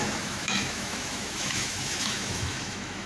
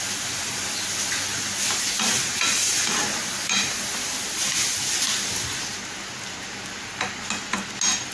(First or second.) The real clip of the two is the second